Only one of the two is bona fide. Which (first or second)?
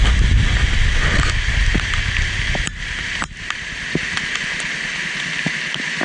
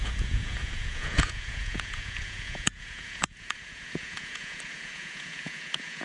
first